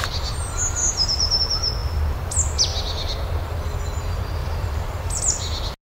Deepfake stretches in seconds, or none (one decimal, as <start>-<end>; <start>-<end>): 0.8-1.4; 4.4-5.2